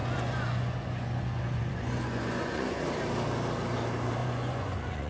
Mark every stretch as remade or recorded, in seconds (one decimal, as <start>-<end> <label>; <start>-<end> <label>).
0.0-2.8 remade; 2.8-4.2 recorded; 4.2-5.1 remade